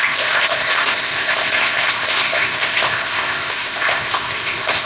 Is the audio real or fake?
fake